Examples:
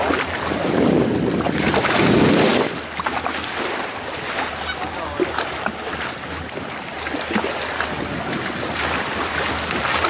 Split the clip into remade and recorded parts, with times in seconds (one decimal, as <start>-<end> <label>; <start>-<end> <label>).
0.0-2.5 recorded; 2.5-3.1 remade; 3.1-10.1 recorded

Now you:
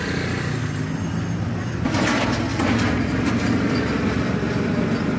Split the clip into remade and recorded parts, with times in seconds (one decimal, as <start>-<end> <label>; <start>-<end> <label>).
0.0-5.2 recorded

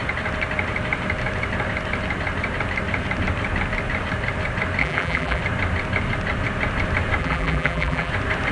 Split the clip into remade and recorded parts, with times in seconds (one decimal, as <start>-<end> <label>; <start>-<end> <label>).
0.0-4.8 recorded; 4.8-5.4 remade; 5.4-7.2 recorded; 7.2-8.1 remade; 8.1-8.5 recorded